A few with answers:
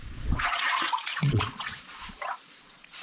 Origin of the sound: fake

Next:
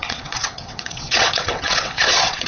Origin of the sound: fake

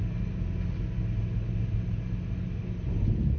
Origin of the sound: real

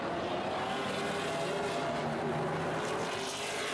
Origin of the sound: real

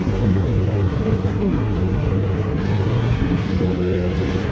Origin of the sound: fake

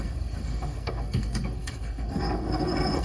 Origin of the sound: fake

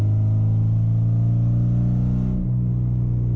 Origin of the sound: real